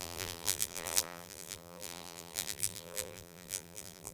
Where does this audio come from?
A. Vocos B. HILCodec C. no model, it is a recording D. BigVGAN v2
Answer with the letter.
D